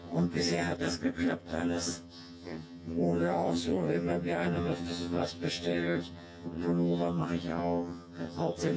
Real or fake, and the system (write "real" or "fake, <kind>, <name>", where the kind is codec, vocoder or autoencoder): fake, vocoder, HiFi-GAN